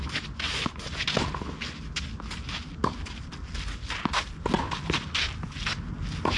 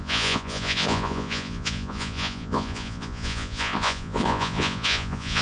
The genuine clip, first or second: first